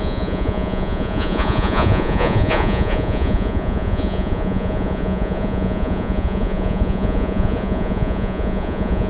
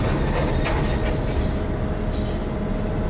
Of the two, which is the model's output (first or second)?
first